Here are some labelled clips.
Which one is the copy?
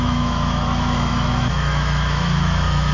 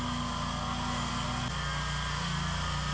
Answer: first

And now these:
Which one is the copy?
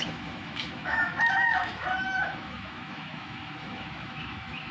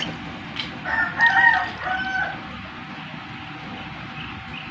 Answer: first